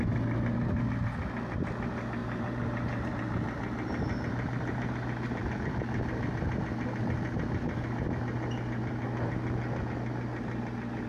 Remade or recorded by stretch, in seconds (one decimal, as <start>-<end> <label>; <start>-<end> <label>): 0.0-2.2 recorded; 2.2-3.1 remade; 3.1-11.1 recorded